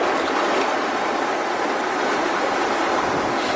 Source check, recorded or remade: recorded